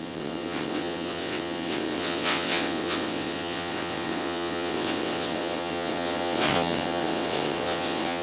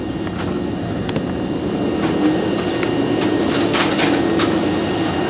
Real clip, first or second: second